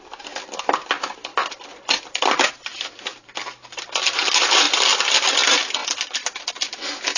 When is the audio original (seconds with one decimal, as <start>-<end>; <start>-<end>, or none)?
0.0-7.2